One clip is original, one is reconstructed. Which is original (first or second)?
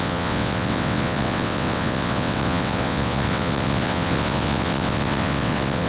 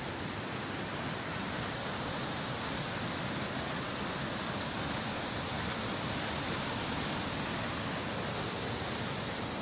second